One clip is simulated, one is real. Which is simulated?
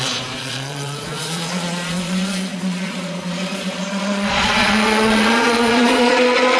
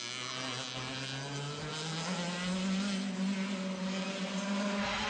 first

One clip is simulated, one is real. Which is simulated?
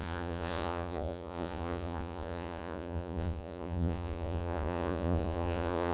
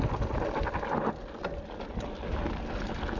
first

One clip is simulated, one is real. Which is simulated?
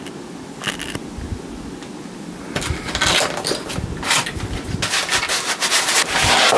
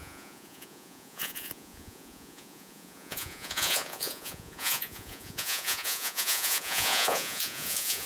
second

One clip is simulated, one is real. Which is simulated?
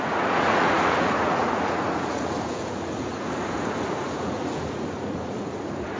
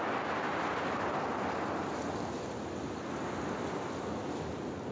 first